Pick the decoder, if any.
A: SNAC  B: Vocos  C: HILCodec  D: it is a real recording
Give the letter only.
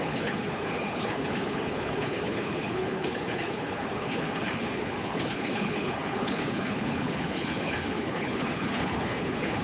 C